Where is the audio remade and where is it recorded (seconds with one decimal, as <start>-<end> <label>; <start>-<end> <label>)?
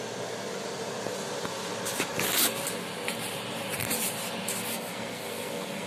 0.0-4.7 recorded; 4.7-5.9 remade